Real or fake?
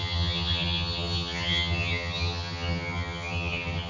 fake